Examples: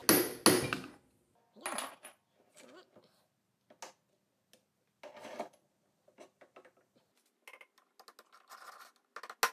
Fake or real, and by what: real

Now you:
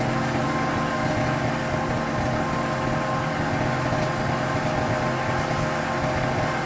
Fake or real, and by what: real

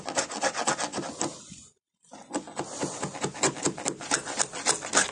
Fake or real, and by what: real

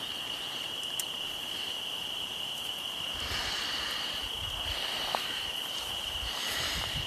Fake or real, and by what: fake, vocoder, BigVGAN v2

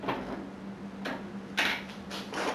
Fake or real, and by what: real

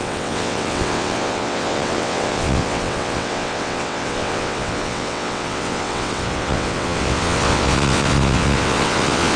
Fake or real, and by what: fake, vocoder, WaveNeXt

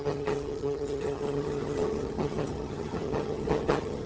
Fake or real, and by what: fake, vocoder, HiFi-GAN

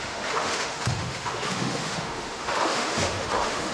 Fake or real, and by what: fake, autoencoder, DAC-VAE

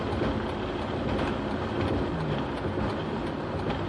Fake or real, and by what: real